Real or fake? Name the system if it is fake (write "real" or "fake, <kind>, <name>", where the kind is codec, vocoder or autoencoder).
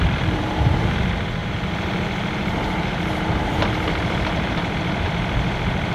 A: fake, vocoder, BigVGAN v2